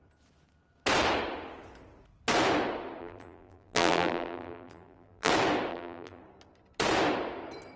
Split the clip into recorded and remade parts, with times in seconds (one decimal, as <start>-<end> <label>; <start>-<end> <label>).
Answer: 0.0-3.0 recorded; 3.0-5.3 remade; 5.3-5.7 recorded; 5.7-6.2 remade; 6.2-7.8 recorded